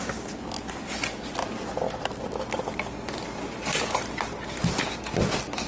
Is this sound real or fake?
real